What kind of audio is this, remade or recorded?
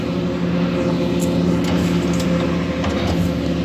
recorded